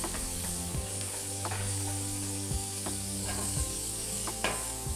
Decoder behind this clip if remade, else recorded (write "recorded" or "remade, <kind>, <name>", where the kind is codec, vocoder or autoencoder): remade, codec, DAC